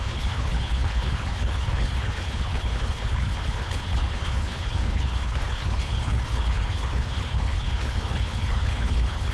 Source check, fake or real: fake